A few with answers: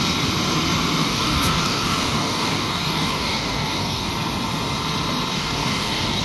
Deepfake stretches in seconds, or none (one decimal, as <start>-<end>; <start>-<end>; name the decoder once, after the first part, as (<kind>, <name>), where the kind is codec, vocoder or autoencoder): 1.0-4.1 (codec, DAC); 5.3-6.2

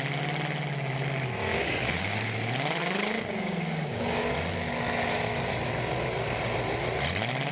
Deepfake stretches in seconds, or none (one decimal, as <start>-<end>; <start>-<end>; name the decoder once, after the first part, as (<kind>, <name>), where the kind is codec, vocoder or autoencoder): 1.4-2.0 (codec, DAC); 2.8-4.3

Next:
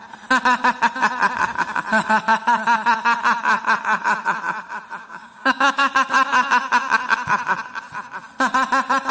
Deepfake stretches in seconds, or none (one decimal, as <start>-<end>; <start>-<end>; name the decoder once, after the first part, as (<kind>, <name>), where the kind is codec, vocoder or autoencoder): 5.0-5.9 (codec, DAC)

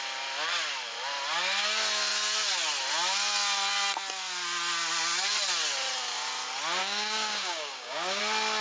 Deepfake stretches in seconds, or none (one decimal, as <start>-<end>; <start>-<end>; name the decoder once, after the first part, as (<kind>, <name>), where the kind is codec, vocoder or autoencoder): 6.8-8.2 (codec, DAC)

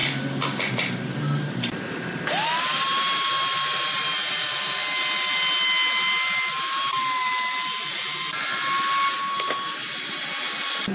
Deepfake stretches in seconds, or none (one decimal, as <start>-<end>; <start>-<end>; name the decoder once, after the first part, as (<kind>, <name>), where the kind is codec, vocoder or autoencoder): none